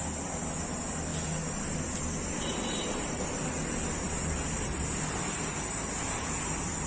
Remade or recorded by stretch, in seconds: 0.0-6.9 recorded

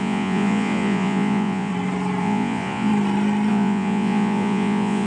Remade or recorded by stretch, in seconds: 0.0-1.7 remade; 1.7-2.2 recorded; 2.2-2.9 remade; 2.9-3.5 recorded; 3.5-5.1 remade

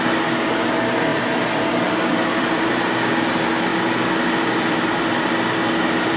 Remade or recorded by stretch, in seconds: 0.0-1.1 recorded; 1.1-2.8 remade; 2.8-3.7 recorded; 3.7-5.3 remade; 5.3-6.2 recorded

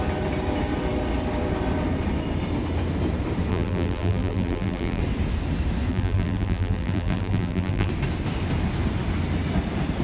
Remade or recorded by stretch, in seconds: 0.0-3.5 recorded; 3.5-5.0 remade; 5.0-5.9 recorded; 5.9-7.9 remade; 7.9-10.0 recorded

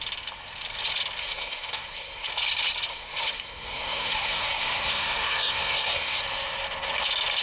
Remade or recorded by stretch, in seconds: 0.0-1.2 recorded; 1.2-2.3 remade; 2.3-2.9 recorded; 2.9-6.2 remade; 6.2-7.4 recorded

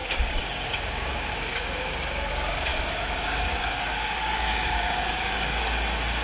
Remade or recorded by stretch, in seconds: 0.0-6.2 remade

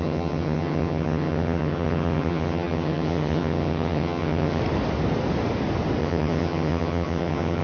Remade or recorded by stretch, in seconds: 0.0-4.6 remade; 4.6-6.0 recorded; 6.0-7.6 remade

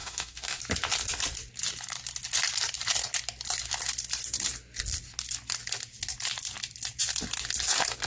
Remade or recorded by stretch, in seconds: 0.0-0.6 remade; 0.6-8.1 recorded